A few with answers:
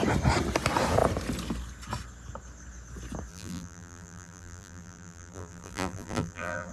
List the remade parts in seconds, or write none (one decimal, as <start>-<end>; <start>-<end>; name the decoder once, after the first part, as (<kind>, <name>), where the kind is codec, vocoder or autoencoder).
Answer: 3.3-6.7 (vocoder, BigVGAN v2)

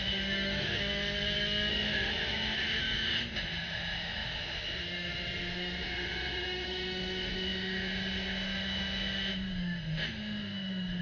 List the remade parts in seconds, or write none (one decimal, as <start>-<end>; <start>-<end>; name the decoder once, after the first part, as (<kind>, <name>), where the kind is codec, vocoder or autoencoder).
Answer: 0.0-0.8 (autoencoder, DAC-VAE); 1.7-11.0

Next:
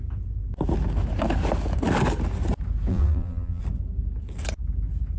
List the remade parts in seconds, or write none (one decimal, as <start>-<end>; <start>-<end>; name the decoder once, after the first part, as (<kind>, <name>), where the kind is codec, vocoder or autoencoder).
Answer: 2.9-3.6 (vocoder, BigVGAN v2)

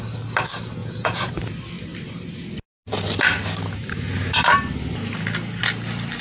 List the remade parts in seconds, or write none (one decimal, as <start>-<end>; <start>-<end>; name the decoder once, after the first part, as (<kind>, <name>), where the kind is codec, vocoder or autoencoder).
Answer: 0.8-1.3 (vocoder, Vocos)